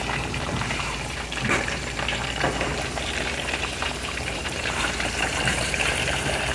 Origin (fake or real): fake